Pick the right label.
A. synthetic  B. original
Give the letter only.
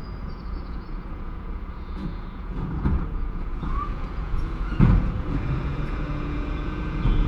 A